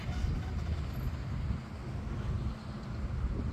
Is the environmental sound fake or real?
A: real